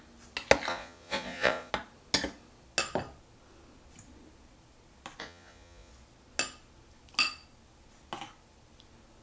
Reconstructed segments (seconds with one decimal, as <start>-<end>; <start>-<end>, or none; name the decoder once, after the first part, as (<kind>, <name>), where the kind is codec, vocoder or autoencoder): 0.7-1.7 (vocoder, Vocos); 5.2-5.9